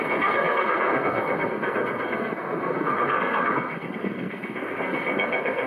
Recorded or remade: remade